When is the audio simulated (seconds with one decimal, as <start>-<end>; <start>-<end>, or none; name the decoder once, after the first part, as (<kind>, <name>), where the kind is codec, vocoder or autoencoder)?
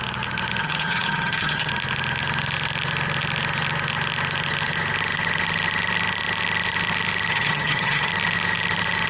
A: 0.6-1.7 (vocoder, HiFi-GAN); 7.3-8.1